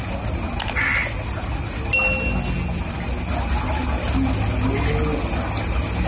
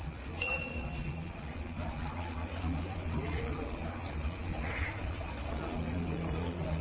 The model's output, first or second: second